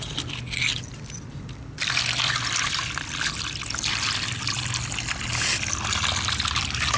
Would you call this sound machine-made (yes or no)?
no